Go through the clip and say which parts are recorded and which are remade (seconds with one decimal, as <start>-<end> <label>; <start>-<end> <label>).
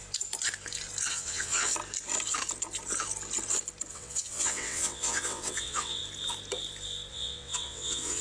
0.0-1.1 recorded; 1.1-1.7 remade; 1.7-3.9 recorded; 3.9-6.0 remade; 6.0-7.1 recorded; 7.1-8.2 remade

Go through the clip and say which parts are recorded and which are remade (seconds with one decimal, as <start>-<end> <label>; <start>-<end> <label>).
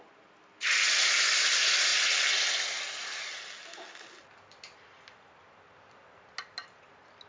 0.0-7.3 recorded